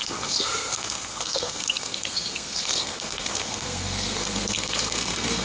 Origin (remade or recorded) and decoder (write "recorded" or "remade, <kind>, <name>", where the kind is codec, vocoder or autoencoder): remade, codec, SNAC